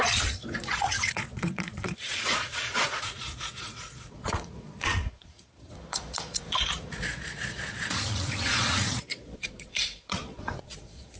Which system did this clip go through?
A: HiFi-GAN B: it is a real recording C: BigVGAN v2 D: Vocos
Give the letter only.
D